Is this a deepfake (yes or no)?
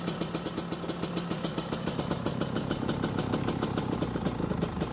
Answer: no